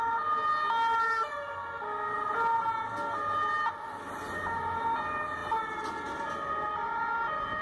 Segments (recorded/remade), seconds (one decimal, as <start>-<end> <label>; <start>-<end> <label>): 0.0-7.6 recorded